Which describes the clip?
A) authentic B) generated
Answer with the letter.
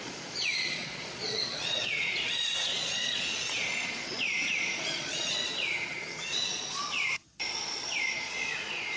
B